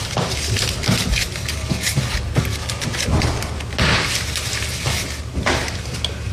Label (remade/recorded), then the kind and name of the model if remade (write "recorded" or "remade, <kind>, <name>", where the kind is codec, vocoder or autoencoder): recorded